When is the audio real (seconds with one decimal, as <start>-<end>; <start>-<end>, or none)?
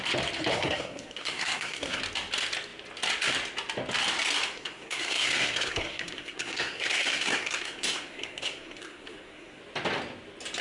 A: 0.0-0.5; 2.0-4.5; 9.6-10.6